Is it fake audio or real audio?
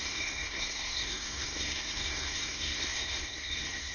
fake